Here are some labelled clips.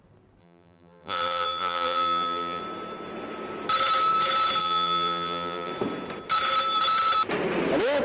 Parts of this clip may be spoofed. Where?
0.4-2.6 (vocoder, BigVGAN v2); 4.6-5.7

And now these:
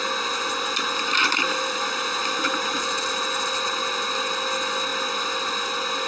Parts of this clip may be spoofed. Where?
1.1-2.5 (vocoder, BigVGAN v2)